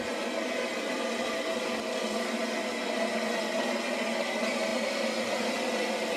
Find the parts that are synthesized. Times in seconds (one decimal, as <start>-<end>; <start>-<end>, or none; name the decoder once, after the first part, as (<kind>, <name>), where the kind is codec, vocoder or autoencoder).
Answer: none